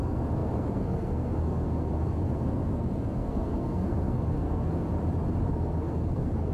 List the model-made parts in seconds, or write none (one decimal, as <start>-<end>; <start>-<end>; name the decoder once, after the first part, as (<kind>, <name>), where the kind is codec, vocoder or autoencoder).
0.0-4.9 (codec, SNAC); 5.5-6.5

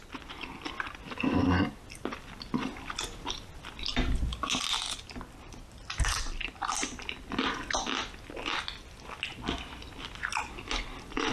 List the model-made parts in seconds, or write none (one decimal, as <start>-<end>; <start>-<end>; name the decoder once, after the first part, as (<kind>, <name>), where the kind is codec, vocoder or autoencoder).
none

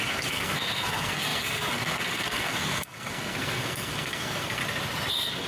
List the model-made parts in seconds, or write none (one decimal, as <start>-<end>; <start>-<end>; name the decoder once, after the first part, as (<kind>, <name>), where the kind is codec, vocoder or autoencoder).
0.0-4.6 (codec, SNAC); 5.1-5.5

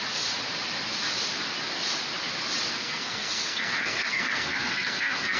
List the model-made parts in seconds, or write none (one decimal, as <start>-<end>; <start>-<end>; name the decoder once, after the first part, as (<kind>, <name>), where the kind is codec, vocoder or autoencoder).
2.7-5.4 (codec, SNAC)

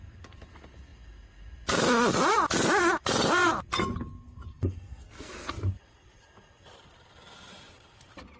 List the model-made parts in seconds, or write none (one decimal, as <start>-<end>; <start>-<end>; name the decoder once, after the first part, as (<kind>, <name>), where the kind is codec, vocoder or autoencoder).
4.5-5.5 (codec, SNAC)